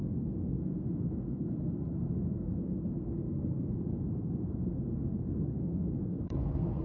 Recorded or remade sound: remade